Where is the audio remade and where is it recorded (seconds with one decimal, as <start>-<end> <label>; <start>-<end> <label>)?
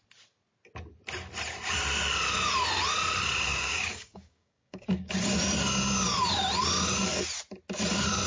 0.0-3.5 recorded; 3.5-5.1 remade; 5.1-8.3 recorded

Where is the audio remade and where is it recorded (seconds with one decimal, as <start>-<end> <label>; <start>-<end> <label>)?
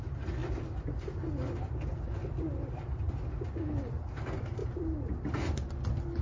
0.0-6.2 recorded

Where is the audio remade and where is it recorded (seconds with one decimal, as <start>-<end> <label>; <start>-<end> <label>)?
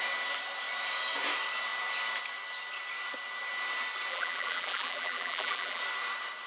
0.0-4.1 recorded; 4.1-5.8 remade; 5.8-6.5 recorded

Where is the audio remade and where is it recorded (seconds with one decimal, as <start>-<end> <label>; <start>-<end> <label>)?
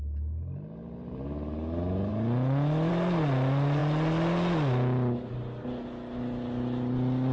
0.0-7.3 recorded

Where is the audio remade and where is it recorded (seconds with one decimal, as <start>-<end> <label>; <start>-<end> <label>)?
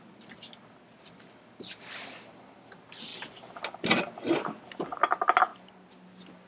0.0-6.5 recorded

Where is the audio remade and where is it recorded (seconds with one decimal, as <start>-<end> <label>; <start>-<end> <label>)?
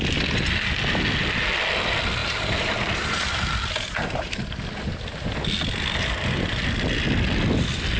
0.0-2.2 recorded; 2.2-4.3 remade; 4.3-8.0 recorded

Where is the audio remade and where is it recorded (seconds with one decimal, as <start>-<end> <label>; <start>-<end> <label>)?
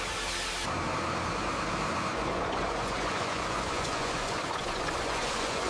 0.0-2.1 recorded; 2.1-5.7 remade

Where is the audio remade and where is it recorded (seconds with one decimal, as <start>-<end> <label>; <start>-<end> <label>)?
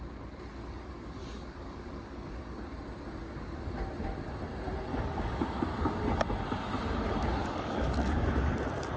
0.0-0.5 recorded; 0.5-2.7 remade; 2.7-3.2 recorded; 3.2-3.8 remade; 3.8-4.9 recorded; 4.9-5.6 remade; 5.6-7.4 recorded; 7.4-8.5 remade; 8.5-9.0 recorded